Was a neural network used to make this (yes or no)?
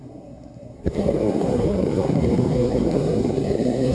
yes